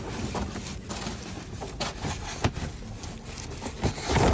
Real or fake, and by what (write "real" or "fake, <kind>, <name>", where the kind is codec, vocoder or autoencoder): real